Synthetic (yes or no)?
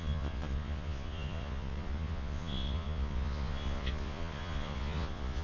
yes